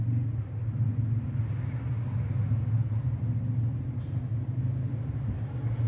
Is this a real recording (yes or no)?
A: yes